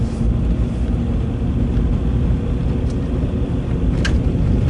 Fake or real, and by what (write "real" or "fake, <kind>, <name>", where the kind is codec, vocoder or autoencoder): real